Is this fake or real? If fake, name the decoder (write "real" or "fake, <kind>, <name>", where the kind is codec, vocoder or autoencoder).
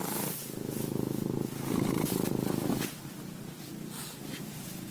real